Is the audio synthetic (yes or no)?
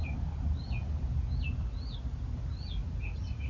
no